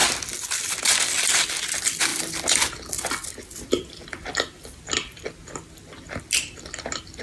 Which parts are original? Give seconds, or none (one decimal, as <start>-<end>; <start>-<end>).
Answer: 0.0-7.2